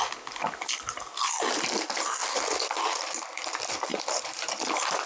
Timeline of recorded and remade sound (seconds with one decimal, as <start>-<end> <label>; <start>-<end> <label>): 0.0-3.9 recorded; 3.9-4.5 remade; 4.5-5.1 recorded

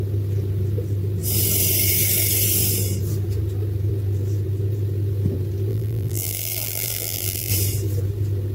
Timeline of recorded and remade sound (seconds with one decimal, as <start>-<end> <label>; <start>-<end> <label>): 0.0-5.7 recorded; 5.7-7.5 remade; 7.5-8.5 recorded

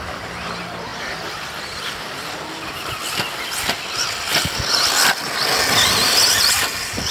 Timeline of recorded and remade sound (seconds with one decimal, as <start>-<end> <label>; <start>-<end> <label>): 0.0-0.9 recorded; 0.9-2.5 remade; 2.5-7.1 recorded

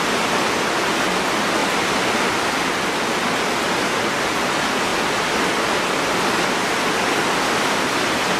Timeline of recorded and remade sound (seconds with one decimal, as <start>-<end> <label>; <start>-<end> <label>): 0.0-8.4 recorded

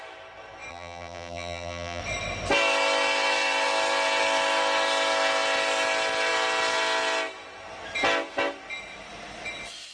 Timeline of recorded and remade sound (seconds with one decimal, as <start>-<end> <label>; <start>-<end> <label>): 0.0-0.7 recorded; 0.7-2.0 remade; 2.0-9.9 recorded

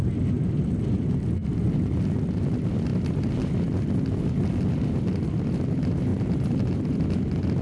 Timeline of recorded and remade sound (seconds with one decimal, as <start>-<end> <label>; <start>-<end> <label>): 0.0-6.1 recorded; 6.1-7.6 remade

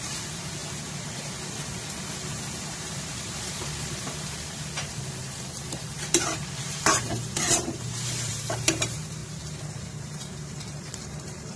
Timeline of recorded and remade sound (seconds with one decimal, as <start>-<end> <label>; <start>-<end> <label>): 0.0-0.6 remade; 0.6-2.3 recorded; 2.3-9.2 remade; 9.2-10.0 recorded; 10.0-11.6 remade

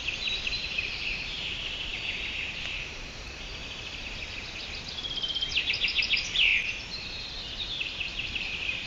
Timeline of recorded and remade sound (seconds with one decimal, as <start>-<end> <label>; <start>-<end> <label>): 0.0-3.6 remade; 3.6-5.6 recorded; 5.6-8.9 remade